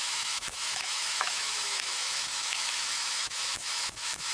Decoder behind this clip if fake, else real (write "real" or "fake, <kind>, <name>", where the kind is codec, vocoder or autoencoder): fake, autoencoder, DAC-VAE